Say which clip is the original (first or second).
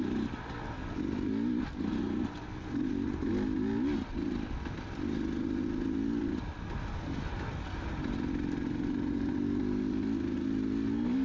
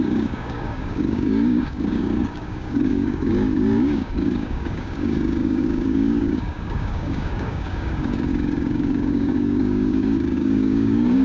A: first